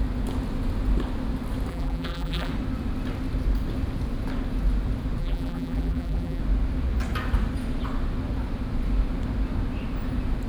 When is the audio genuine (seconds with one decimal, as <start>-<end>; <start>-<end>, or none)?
0.0-1.7; 2.5-5.2; 6.4-10.5